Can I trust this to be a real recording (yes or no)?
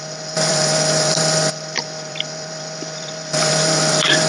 no